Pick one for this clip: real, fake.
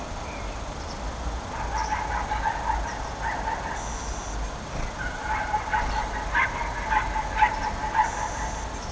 real